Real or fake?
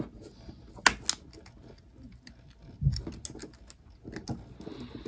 real